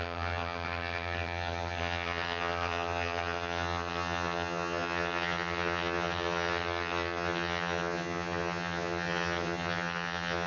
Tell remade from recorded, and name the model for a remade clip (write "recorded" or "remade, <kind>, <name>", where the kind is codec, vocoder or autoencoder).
remade, vocoder, HiFi-GAN